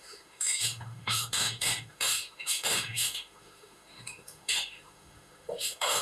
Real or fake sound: fake